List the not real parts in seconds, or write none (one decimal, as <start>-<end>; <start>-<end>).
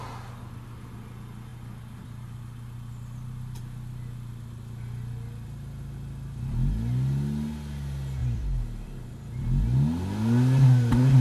1.5-3.6; 8.2-9.0